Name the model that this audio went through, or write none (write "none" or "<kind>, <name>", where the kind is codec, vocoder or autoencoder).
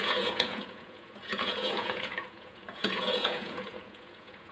vocoder, Vocos